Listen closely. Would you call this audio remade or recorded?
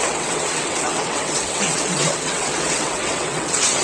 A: remade